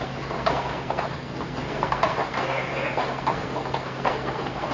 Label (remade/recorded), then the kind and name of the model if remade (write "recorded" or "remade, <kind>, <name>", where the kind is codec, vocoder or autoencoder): remade, codec, SNAC